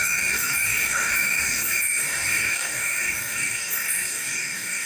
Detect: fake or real fake